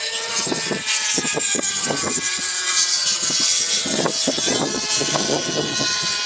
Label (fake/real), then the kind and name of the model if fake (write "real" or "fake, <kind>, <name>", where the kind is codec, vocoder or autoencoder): fake, vocoder, HiFi-GAN